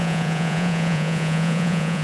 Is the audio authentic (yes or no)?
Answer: no